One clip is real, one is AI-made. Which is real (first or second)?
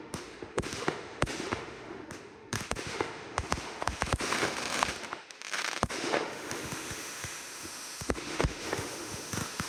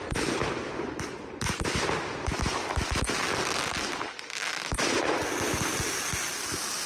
second